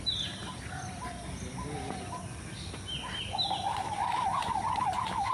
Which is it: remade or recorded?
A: recorded